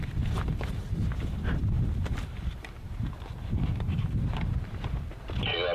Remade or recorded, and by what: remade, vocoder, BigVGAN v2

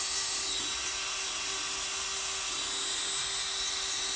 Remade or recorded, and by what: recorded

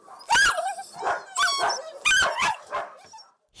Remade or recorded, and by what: remade, vocoder, BigVGAN v2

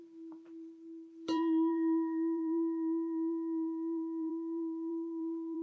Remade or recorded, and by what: remade, vocoder, BigVGAN v2